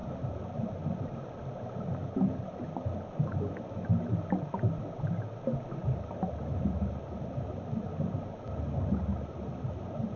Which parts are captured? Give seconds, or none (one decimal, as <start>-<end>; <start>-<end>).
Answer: 0.0-10.2